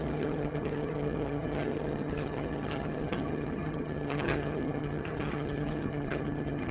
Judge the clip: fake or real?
fake